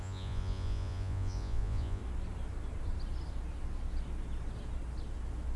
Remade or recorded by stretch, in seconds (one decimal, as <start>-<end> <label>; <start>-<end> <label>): 0.0-2.0 remade; 2.0-5.6 recorded